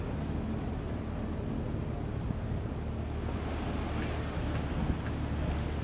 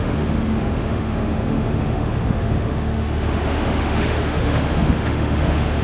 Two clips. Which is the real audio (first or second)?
first